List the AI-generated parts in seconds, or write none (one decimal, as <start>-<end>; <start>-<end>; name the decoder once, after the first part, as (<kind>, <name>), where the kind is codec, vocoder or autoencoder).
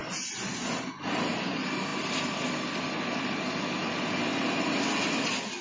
none